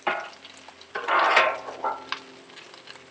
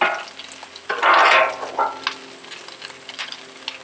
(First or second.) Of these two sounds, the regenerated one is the first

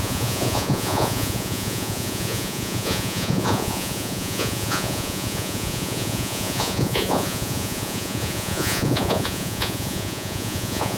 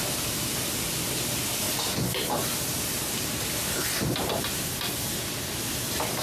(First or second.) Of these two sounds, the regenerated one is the first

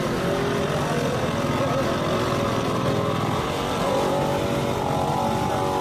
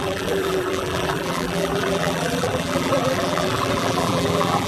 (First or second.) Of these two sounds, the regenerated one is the second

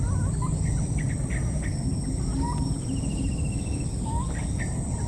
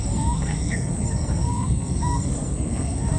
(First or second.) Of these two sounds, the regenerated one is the second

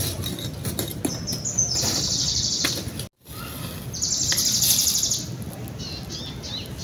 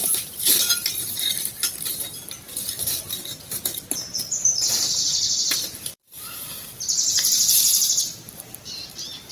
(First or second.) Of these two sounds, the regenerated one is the second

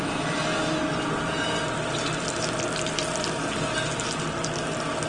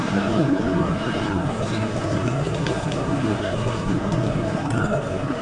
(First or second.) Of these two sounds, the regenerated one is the second